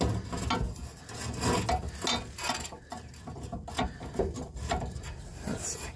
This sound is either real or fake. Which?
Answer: real